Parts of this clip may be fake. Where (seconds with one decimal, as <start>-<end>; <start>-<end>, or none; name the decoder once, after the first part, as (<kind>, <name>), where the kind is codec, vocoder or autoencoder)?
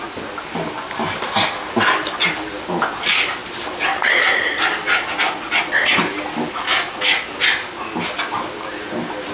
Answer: none